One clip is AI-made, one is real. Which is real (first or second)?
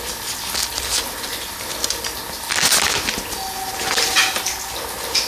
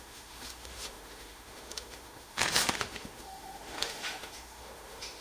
first